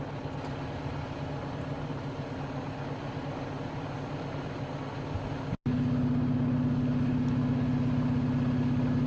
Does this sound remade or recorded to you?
recorded